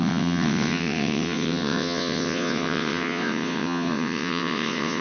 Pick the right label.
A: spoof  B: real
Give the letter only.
A